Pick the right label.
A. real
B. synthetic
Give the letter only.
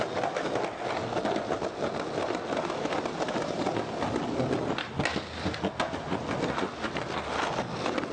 A